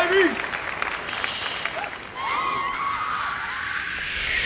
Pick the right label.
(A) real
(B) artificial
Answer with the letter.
A